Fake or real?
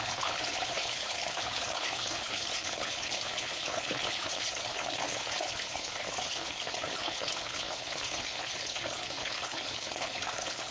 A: fake